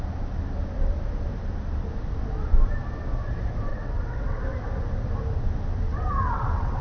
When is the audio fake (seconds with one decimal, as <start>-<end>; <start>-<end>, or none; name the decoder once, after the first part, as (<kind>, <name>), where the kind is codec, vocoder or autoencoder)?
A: 3.7-4.4 (vocoder, WaveNeXt); 5.9-6.8